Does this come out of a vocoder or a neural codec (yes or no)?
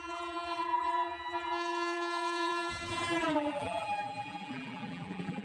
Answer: yes